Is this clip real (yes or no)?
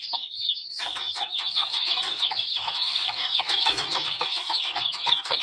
no